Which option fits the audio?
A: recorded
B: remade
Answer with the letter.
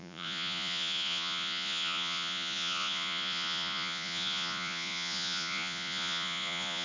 B